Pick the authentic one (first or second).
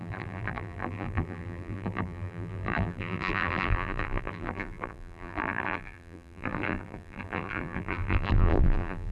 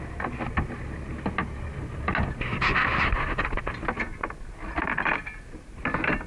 second